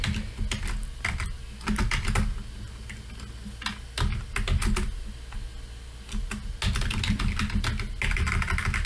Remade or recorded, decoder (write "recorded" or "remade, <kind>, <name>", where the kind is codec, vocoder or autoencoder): recorded